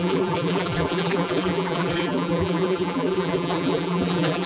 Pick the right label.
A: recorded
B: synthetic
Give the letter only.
B